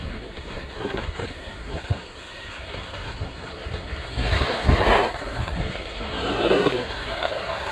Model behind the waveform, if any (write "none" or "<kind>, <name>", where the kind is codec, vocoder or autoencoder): codec, SNAC